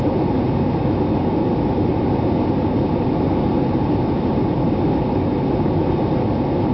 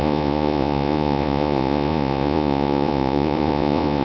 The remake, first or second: second